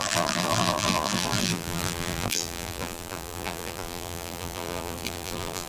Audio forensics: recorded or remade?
remade